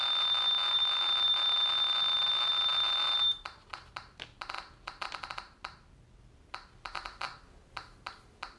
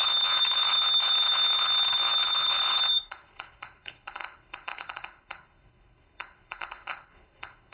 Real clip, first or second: first